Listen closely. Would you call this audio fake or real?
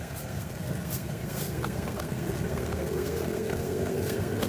fake